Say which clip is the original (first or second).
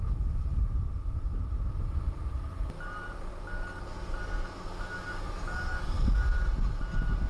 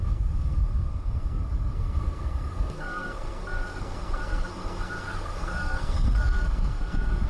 first